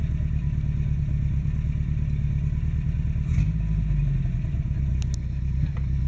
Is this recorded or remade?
recorded